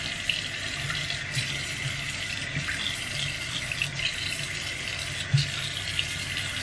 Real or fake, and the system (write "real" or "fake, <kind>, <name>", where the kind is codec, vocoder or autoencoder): real